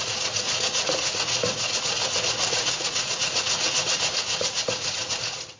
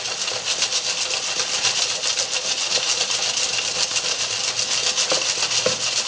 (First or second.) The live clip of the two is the second